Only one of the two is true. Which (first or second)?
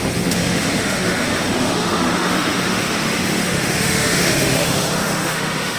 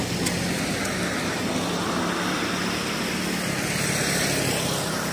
second